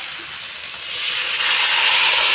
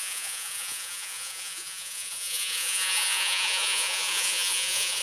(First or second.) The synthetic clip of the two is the second